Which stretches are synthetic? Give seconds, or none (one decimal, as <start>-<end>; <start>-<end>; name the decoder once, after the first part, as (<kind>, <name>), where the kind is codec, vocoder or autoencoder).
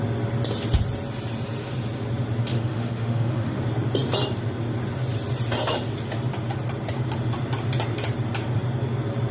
2.5-3.6 (autoencoder, DAC-VAE)